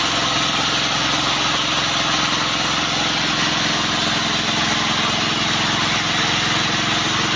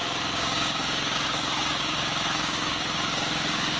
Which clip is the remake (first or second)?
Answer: second